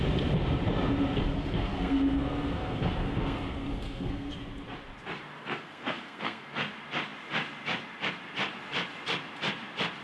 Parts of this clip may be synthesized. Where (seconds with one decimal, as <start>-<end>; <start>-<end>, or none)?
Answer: 1.3-4.3; 5.4-6.5